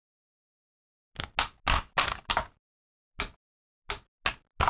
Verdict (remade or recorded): recorded